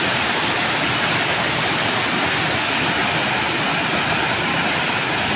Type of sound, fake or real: real